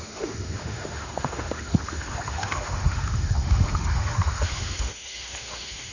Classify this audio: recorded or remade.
remade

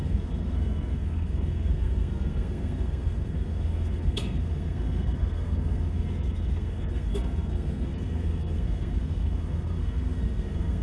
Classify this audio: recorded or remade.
remade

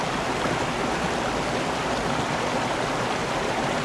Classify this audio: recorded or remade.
recorded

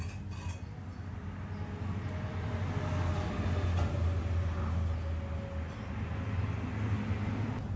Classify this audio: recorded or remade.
recorded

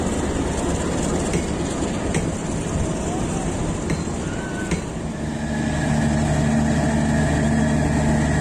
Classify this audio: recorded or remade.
recorded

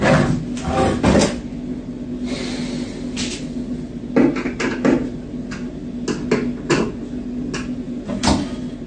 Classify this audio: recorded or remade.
recorded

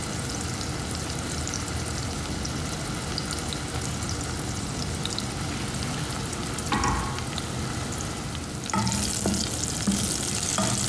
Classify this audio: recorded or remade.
recorded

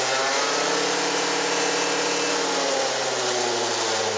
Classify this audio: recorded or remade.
recorded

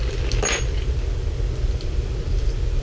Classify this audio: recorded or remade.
recorded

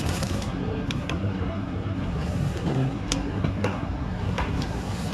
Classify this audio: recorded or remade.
remade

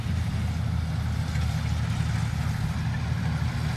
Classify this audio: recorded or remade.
recorded